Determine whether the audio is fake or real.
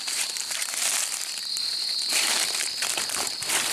real